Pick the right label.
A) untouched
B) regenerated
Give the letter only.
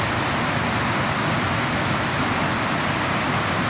A